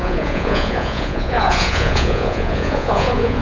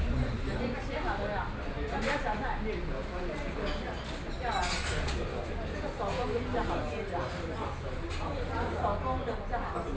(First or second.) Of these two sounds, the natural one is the second